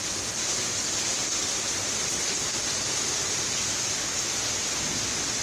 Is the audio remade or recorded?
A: recorded